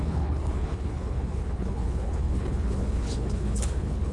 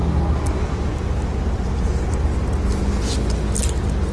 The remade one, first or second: first